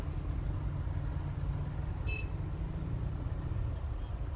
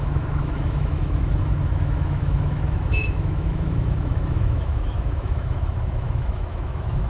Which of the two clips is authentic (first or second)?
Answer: first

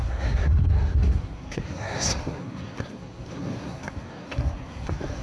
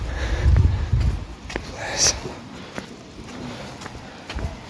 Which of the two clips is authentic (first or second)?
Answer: second